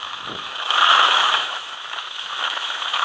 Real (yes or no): no